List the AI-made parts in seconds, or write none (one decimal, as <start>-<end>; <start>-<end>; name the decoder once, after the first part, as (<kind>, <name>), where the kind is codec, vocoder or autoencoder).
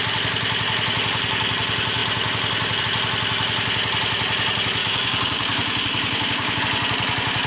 4.8-6.6 (codec, DAC)